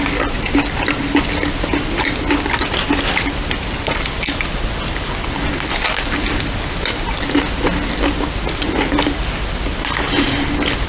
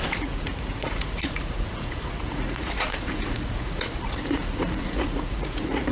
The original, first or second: first